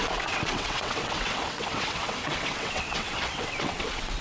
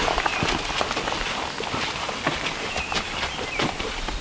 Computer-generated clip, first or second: first